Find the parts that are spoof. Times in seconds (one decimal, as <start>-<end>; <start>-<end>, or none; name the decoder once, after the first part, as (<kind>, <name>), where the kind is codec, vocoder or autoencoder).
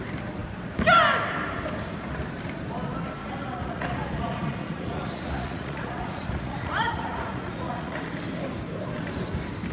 3.2-8.0 (vocoder, Vocos)